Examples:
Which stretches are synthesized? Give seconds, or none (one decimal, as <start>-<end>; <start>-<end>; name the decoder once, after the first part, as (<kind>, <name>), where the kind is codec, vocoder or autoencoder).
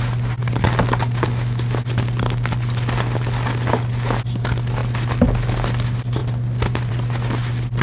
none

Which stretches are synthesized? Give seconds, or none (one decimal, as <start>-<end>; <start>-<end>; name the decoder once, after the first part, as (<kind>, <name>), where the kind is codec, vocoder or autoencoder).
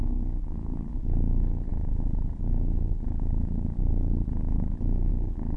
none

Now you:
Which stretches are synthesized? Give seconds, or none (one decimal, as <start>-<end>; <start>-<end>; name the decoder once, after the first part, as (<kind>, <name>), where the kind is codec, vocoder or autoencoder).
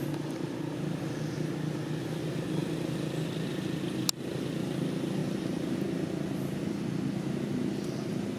none